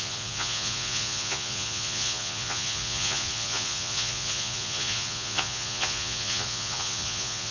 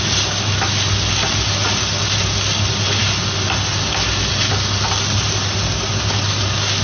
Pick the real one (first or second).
second